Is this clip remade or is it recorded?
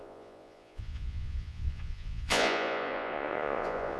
remade